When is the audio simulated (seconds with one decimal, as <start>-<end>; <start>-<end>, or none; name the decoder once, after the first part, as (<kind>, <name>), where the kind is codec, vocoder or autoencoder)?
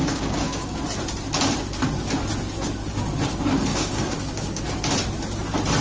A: 0.0-0.8 (codec, DAC); 3.7-4.6